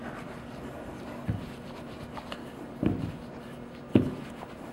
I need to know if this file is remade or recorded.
recorded